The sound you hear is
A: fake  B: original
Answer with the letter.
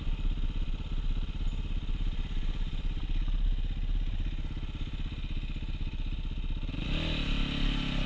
B